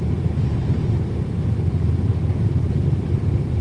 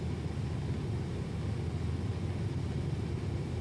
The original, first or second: second